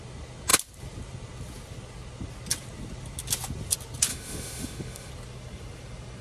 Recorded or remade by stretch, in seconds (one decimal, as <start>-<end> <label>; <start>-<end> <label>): 0.0-4.1 recorded; 4.1-5.1 remade; 5.1-6.2 recorded